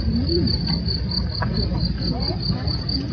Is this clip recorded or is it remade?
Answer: recorded